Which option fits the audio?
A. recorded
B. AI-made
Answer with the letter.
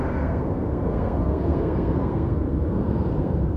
B